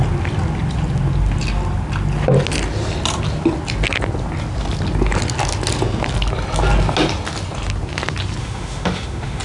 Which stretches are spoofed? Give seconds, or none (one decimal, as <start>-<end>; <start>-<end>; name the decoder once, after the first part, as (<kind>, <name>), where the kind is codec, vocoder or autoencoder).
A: 8.4-9.4 (autoencoder, DAC-VAE)